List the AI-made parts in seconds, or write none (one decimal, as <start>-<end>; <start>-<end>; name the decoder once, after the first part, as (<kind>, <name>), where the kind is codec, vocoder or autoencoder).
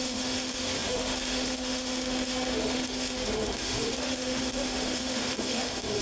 0.0-6.0 (autoencoder, DAC-VAE)